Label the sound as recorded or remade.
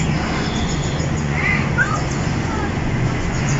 remade